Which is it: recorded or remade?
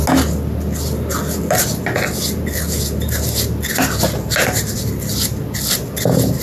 recorded